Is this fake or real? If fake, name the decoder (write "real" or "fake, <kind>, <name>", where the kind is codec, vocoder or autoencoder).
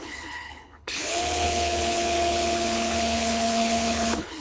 fake, codec, HILCodec